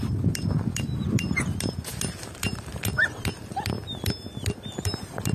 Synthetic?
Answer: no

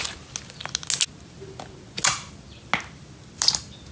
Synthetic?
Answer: no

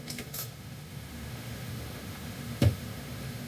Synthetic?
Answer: yes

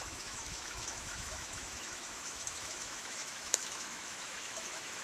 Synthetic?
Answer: yes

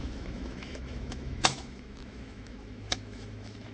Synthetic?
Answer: yes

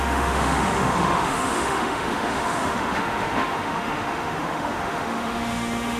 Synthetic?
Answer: yes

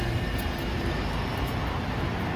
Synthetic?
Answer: no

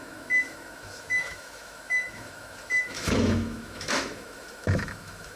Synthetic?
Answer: yes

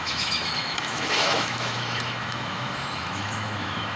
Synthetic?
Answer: yes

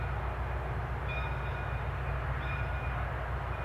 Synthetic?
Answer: no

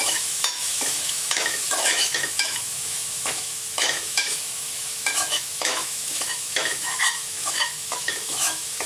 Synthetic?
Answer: yes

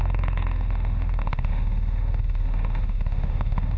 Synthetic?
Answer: yes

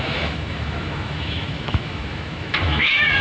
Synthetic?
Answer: yes